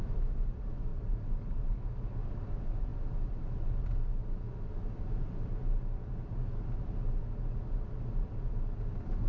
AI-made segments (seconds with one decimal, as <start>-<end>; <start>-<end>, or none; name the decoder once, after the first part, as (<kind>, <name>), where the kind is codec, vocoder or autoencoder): 0.9-1.6 (vocoder, BigVGAN v2); 2.9-3.7